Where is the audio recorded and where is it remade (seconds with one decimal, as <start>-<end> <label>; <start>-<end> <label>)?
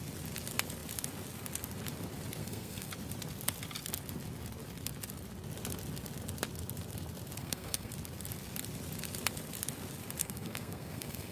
0.0-2.4 recorded; 2.4-2.9 remade; 2.9-7.4 recorded; 7.4-7.9 remade; 7.9-10.2 recorded; 10.2-11.3 remade